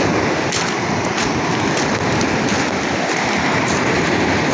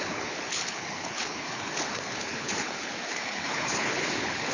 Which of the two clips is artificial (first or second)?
second